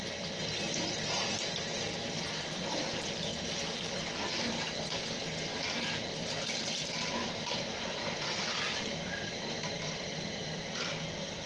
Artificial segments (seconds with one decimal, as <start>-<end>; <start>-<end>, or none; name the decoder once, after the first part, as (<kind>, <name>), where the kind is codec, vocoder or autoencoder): 7.2-10.3 (vocoder, BigVGAN v2)